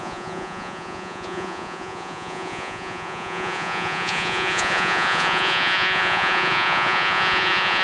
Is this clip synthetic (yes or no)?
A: yes